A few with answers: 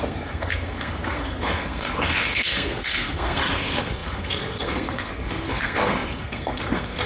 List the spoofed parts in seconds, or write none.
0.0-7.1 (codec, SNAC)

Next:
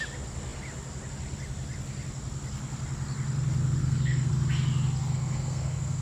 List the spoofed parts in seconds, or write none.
3.8-4.3 (codec, SNAC); 5.1-6.0

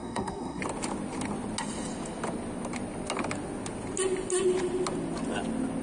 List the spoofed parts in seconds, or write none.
0.0-0.6 (codec, SNAC)

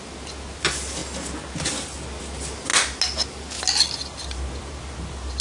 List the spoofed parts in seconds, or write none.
none

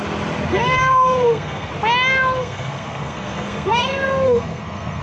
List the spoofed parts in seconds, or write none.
0.5-1.7 (codec, SNAC); 2.4-5.0